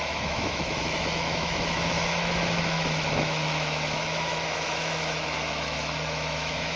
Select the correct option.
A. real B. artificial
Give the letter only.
B